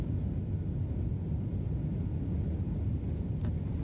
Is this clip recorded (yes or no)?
yes